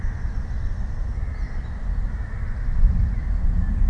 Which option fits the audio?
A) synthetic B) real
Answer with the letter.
B